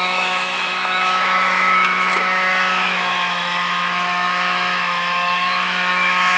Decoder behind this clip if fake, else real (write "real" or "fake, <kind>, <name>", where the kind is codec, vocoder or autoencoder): fake, autoencoder, DAC-VAE